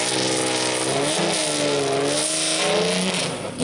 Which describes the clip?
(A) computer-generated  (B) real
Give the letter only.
B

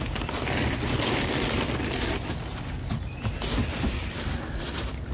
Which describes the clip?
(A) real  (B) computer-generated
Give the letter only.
A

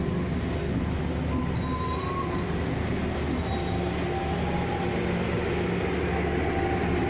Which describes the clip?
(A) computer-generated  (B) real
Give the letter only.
B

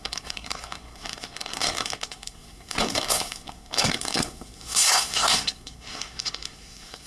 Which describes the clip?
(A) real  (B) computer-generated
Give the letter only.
B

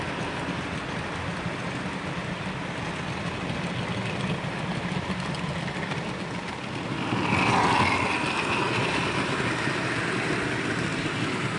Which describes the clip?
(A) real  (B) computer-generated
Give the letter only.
A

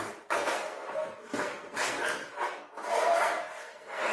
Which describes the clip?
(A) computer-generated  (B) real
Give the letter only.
A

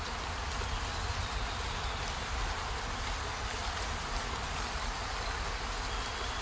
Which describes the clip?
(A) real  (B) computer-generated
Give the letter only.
A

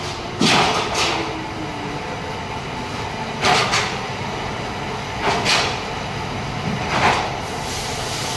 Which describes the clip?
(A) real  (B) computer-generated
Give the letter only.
A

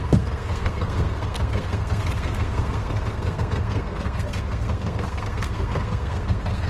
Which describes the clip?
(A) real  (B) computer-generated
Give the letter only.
B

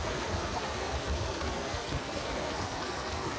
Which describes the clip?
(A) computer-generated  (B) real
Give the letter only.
A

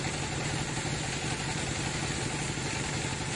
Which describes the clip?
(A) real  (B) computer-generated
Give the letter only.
A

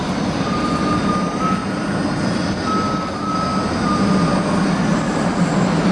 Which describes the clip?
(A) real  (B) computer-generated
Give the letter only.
A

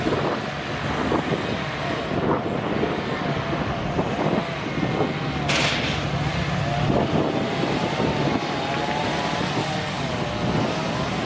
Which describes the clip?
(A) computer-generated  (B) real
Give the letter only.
B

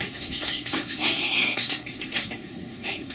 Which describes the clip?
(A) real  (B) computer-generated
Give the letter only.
B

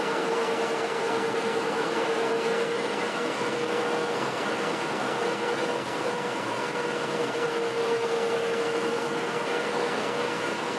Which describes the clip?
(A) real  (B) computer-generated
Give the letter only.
B